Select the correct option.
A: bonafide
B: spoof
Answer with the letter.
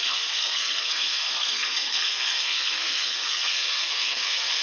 B